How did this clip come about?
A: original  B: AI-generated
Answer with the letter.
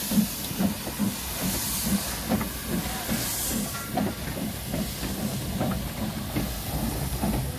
A